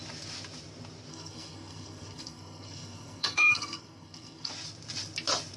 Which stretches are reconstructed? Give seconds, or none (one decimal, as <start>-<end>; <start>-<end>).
1.1-4.5